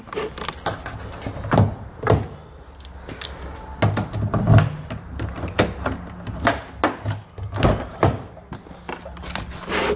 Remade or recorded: recorded